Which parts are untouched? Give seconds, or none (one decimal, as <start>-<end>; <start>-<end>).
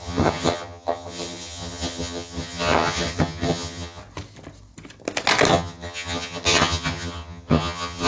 4.0-5.5